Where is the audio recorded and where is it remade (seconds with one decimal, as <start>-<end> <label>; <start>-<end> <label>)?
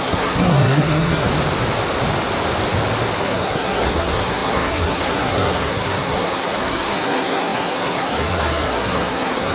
0.0-1.3 remade; 1.3-3.2 recorded; 3.2-9.5 remade